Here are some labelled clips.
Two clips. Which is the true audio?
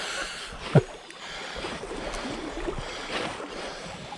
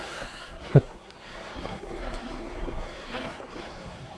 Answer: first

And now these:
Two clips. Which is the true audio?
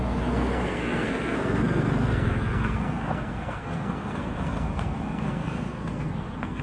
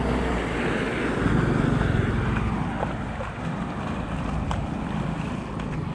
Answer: second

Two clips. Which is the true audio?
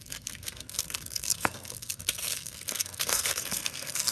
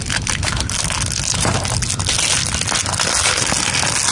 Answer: second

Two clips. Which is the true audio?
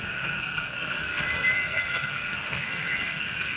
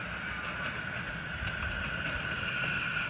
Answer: second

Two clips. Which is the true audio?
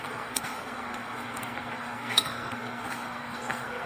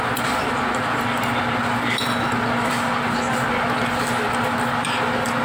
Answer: second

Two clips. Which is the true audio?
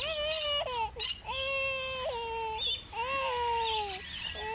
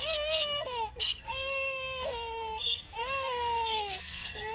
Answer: first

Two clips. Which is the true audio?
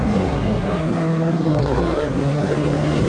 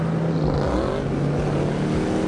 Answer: second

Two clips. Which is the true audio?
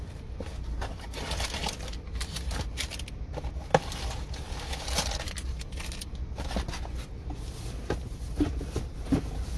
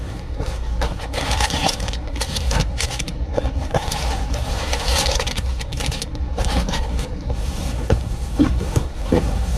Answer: first